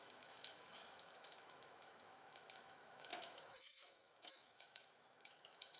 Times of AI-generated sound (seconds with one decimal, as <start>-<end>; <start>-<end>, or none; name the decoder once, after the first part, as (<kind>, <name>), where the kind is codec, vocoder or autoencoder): 0.0-5.8 (autoencoder, DAC-VAE)